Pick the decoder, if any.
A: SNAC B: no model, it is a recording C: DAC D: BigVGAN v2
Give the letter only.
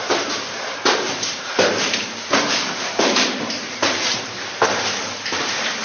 D